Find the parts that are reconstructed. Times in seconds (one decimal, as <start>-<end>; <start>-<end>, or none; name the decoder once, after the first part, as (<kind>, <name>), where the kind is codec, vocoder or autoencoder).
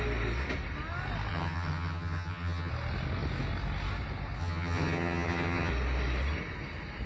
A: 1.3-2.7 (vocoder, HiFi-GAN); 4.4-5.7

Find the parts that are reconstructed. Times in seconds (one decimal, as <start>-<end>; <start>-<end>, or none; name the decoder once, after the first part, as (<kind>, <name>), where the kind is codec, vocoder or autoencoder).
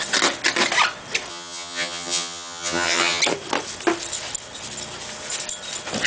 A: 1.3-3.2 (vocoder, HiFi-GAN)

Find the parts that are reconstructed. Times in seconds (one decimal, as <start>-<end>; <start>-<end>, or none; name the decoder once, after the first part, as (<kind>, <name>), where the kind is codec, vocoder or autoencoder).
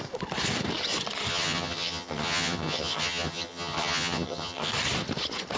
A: 1.3-4.7 (vocoder, HiFi-GAN)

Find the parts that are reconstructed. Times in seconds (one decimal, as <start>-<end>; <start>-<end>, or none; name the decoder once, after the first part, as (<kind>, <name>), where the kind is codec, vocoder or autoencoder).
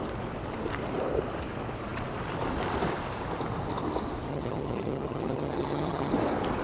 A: 4.3-6.1 (vocoder, HiFi-GAN)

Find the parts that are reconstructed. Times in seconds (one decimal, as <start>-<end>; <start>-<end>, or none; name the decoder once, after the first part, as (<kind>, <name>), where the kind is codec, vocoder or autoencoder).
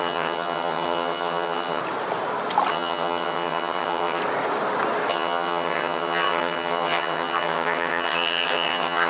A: 0.0-1.8 (vocoder, HiFi-GAN); 2.7-4.2; 5.1-9.1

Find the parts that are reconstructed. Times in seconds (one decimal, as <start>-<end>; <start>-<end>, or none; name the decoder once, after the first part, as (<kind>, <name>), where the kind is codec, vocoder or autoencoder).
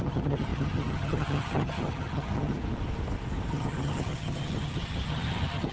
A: 0.0-2.6 (vocoder, HiFi-GAN); 3.5-5.7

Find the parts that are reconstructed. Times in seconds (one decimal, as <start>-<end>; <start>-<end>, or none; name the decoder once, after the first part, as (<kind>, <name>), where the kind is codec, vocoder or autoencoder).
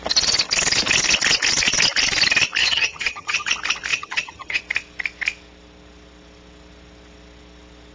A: 2.6-3.5 (vocoder, HiFi-GAN); 3.9-4.6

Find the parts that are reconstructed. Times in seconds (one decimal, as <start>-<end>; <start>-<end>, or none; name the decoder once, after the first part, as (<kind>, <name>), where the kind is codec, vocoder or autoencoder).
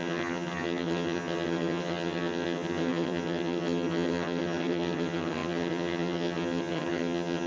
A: 0.0-7.5 (vocoder, HiFi-GAN)